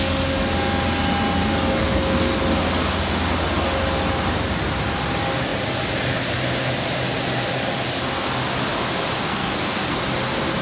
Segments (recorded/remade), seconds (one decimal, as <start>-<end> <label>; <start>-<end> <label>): 0.0-1.8 recorded; 1.8-2.4 remade; 2.4-9.3 recorded; 9.3-10.0 remade; 10.0-10.6 recorded